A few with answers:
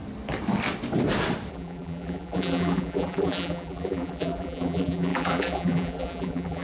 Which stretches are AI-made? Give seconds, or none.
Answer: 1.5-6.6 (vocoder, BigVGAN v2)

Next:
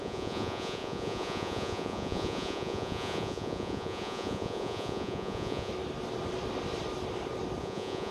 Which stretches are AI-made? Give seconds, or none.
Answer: 0.0-5.7 (vocoder, Vocos); 7.6-8.1

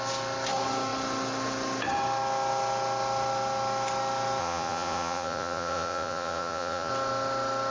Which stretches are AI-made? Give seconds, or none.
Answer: 4.4-6.9 (vocoder, Vocos)

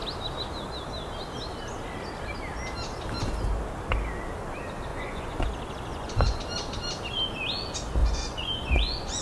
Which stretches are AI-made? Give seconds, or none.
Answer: 4.9-5.5 (vocoder, Vocos); 5.9-6.4; 8.0-9.2

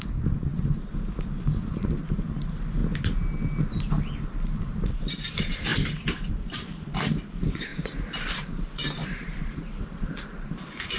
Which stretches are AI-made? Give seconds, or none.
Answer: 0.0-0.5 (vocoder, BigVGAN v2); 1.2-2.8; 4.2-5.7; 6.3-11.0

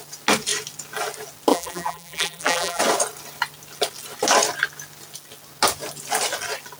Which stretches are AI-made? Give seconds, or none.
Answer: 1.5-2.8 (vocoder, BigVGAN v2)

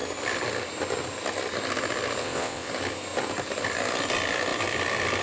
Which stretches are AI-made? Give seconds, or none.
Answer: 2.2-2.7 (vocoder, WaveNeXt)

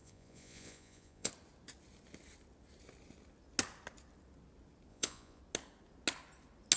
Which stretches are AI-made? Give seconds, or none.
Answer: 0.0-1.3 (vocoder, Vocos); 4.9-5.4